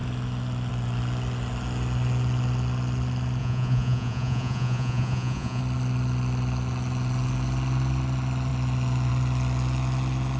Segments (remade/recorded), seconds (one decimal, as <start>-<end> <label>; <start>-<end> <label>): 0.0-3.4 recorded; 3.4-5.6 remade; 5.6-10.4 recorded